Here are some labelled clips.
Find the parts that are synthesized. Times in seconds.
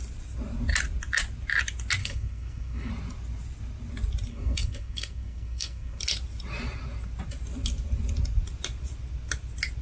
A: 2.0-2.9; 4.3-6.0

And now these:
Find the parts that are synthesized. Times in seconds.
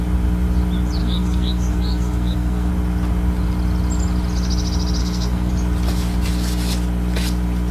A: 1.0-2.7; 5.0-5.5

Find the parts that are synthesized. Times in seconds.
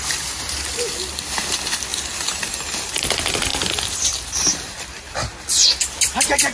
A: none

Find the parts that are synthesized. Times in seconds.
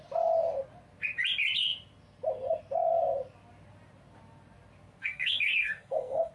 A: 5.0-6.3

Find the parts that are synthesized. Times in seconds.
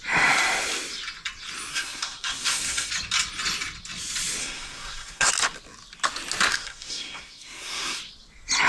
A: 1.7-2.9; 4.4-5.3; 6.5-8.0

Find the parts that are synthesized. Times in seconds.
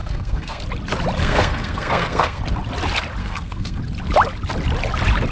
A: 0.0-0.6; 1.2-2.4; 3.2-3.8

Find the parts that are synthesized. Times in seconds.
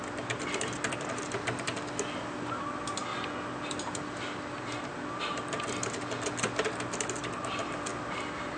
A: none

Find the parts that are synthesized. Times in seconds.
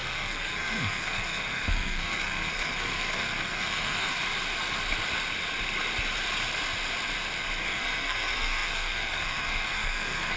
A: 0.0-4.1; 7.6-10.4